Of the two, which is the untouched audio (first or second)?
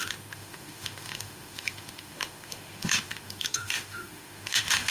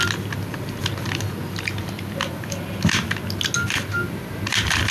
second